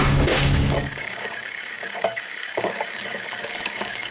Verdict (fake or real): fake